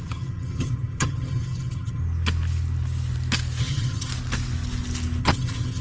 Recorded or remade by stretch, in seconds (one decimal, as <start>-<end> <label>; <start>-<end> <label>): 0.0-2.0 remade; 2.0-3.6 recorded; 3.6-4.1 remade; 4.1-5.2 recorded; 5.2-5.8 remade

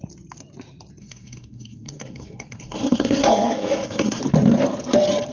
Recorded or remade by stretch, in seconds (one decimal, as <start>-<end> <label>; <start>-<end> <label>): 0.0-1.0 recorded; 1.0-4.2 remade; 4.2-5.3 recorded

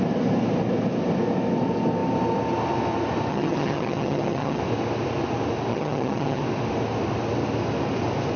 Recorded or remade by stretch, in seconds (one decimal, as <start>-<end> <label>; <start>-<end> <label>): 0.0-3.3 recorded; 3.3-4.6 remade; 4.6-5.7 recorded; 5.7-6.4 remade; 6.4-8.4 recorded

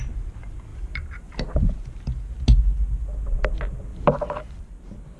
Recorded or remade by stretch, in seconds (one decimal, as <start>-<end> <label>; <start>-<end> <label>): 0.0-0.7 recorded; 0.7-1.7 remade; 1.7-3.9 recorded; 3.9-5.2 remade

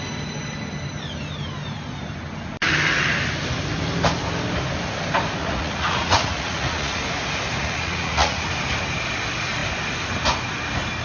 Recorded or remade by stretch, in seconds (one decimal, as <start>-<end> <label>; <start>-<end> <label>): 0.0-5.4 recorded; 5.4-7.0 remade; 7.0-7.6 recorded; 7.6-8.5 remade; 8.5-11.0 recorded

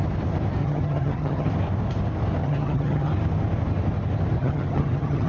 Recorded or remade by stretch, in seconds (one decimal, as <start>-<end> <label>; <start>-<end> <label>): 0.0-0.6 recorded; 0.6-1.5 remade; 1.5-2.4 recorded; 2.4-3.1 remade; 3.1-4.4 recorded; 4.4-5.3 remade